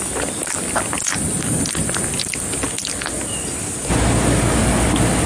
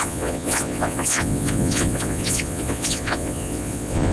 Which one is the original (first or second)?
first